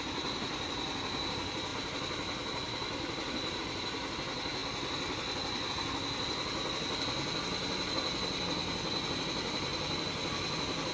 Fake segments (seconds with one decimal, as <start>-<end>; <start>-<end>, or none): 1.7-3.6